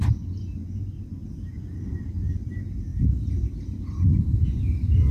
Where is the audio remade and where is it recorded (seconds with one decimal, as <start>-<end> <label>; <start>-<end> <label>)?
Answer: 0.0-5.1 recorded